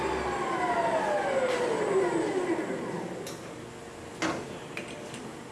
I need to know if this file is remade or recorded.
recorded